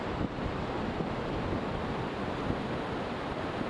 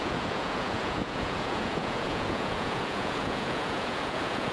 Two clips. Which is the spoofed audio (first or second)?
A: second